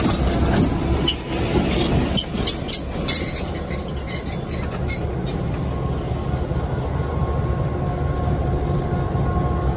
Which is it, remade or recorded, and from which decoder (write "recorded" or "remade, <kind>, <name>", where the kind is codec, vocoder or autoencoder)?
recorded